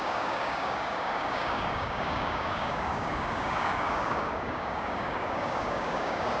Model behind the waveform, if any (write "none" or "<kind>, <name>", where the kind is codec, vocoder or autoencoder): codec, DAC